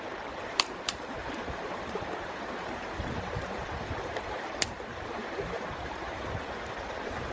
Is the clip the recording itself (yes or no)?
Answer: no